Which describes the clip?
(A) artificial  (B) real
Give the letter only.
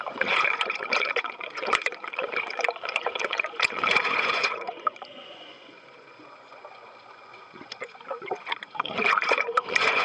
A